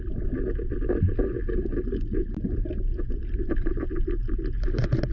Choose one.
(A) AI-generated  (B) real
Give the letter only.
B